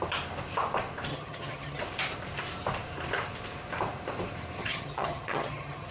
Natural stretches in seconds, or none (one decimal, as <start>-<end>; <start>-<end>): 0.0-1.1; 1.8-4.6